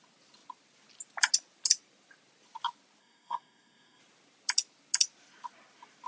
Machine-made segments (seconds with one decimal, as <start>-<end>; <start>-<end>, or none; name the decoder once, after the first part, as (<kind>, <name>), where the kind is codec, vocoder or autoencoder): 3.0-4.0 (codec, SNAC)